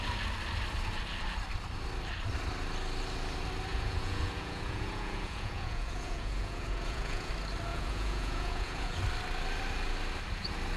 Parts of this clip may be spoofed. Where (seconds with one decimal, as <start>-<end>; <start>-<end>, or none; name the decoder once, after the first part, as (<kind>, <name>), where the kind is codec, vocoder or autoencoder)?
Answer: 3.7-7.3 (vocoder, Vocos); 7.7-9.0